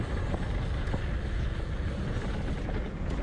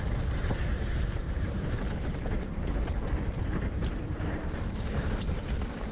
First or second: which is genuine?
first